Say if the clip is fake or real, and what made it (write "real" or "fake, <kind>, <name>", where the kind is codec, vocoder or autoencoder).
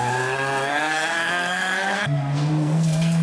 fake, codec, SNAC